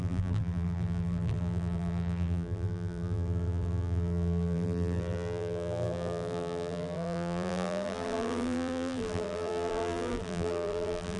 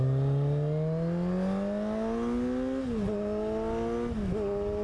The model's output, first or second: first